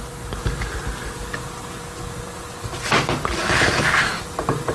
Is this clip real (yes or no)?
yes